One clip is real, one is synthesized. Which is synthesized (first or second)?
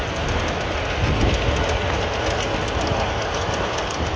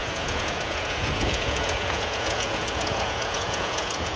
second